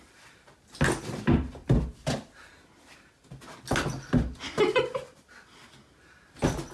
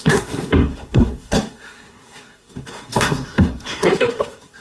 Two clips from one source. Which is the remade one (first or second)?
second